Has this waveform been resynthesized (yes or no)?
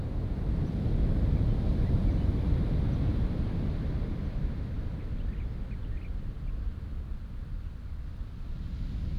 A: no